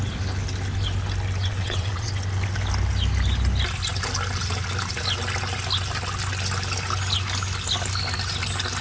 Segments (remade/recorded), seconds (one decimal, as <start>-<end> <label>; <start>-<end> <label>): 0.0-1.4 recorded; 1.4-2.1 remade; 2.1-8.8 recorded

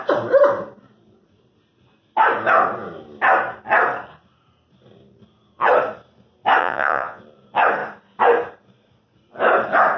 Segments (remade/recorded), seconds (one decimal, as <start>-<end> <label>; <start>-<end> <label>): 0.0-6.6 recorded; 6.6-7.2 remade; 7.2-10.0 recorded